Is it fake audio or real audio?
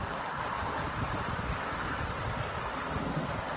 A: real